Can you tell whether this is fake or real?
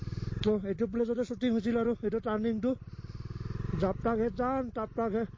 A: real